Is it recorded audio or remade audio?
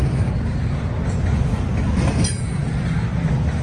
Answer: recorded